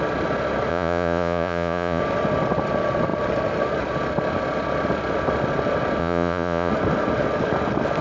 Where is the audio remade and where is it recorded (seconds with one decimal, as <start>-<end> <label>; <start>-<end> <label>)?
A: 0.0-0.7 recorded; 0.7-2.0 remade; 2.0-6.0 recorded; 6.0-6.7 remade; 6.7-8.0 recorded